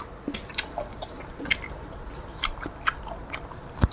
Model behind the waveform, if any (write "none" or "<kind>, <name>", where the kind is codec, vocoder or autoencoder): vocoder, BigVGAN v2